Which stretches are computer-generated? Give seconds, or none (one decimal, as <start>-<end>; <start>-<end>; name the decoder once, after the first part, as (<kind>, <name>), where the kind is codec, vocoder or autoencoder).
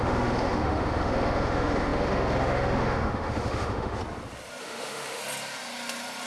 0.0-4.0 (autoencoder, DAC-VAE); 4.6-5.2